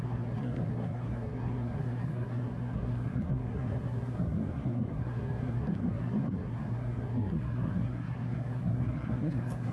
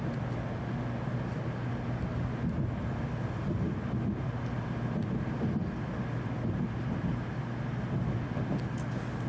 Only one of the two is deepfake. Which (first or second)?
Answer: first